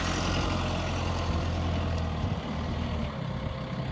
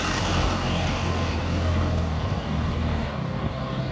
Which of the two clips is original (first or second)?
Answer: first